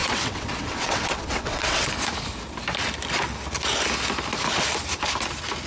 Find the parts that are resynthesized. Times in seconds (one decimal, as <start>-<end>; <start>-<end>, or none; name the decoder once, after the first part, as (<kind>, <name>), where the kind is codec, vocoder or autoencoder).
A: 0.0-1.9 (vocoder, WaveNeXt)